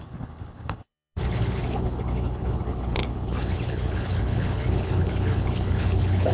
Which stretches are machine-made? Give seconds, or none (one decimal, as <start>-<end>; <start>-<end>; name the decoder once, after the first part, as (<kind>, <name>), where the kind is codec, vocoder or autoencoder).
0.0-6.3 (codec, HILCodec)